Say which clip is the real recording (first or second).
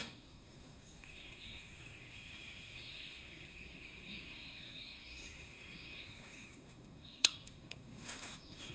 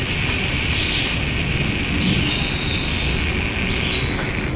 second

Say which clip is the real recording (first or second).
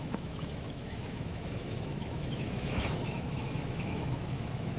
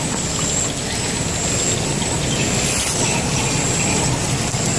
second